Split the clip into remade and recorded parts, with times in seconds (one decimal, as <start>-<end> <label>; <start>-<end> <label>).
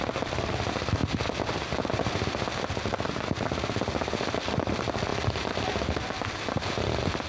0.0-7.3 recorded